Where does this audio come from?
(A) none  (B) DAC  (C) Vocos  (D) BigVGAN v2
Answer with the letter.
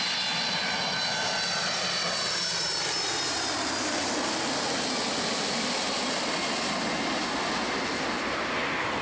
A